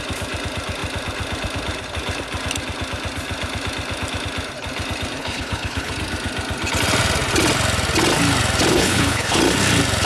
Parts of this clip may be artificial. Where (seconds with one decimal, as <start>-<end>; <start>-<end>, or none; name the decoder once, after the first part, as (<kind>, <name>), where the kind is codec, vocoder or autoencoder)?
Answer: 5.2-5.9 (codec, HILCodec); 8.7-9.4